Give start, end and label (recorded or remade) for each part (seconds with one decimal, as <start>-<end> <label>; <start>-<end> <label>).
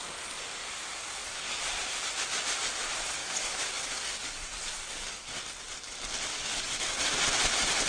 0.0-0.9 recorded; 0.9-1.6 remade; 1.6-3.2 recorded; 3.2-5.4 remade; 5.4-6.3 recorded; 6.3-7.2 remade; 7.2-7.9 recorded